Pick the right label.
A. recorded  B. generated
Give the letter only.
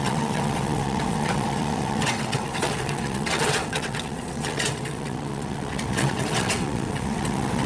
B